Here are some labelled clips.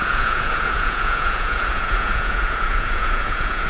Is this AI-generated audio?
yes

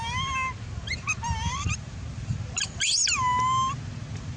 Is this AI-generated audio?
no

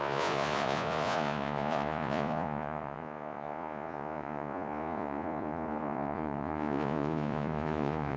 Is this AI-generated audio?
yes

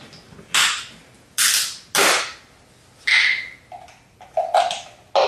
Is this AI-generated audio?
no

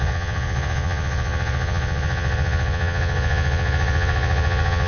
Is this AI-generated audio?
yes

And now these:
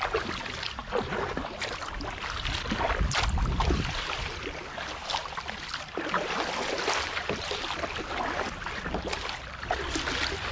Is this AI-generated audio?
no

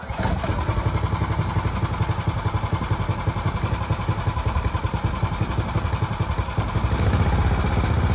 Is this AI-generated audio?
no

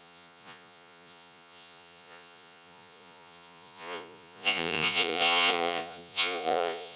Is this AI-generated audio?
yes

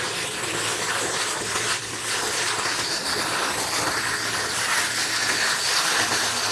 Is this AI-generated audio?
no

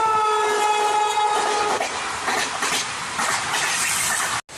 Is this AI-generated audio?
no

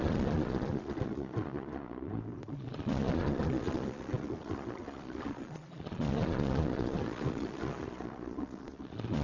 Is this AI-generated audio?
yes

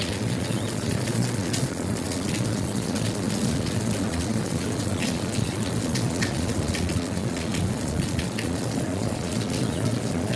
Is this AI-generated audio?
yes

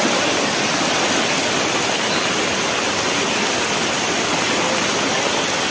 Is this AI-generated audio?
no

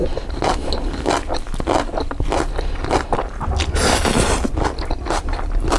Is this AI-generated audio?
no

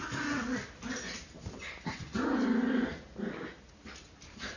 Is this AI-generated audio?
no